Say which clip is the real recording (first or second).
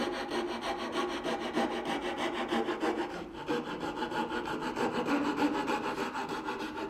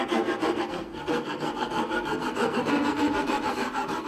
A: first